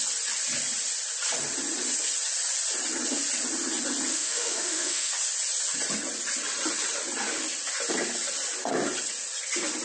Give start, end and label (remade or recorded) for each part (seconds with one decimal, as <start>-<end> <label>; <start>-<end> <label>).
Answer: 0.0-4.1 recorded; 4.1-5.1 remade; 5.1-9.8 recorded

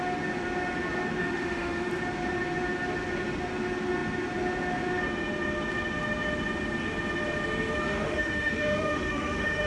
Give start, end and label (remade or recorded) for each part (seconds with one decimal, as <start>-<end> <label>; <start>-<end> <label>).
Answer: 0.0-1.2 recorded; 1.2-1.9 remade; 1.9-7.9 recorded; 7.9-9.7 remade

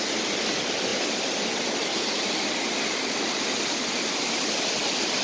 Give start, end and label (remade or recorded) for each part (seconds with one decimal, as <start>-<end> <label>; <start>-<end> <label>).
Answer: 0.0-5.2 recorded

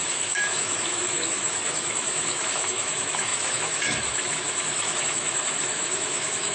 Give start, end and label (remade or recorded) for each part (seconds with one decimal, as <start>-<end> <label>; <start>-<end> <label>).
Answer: 0.0-6.5 remade

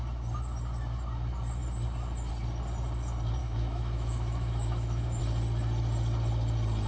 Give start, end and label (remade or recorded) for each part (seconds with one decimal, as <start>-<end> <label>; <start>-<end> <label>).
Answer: 0.0-3.4 recorded; 3.4-5.2 remade; 5.2-6.9 recorded